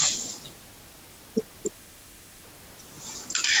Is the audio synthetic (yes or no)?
no